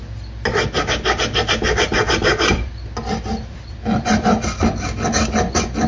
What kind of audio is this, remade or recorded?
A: recorded